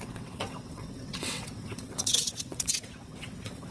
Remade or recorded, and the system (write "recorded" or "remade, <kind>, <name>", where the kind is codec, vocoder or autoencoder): remade, vocoder, WaveNeXt